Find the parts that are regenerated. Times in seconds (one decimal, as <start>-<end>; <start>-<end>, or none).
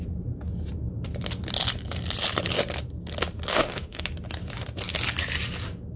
3.5-4.0